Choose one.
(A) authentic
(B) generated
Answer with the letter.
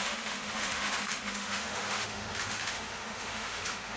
B